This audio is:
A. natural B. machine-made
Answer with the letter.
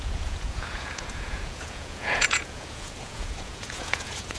B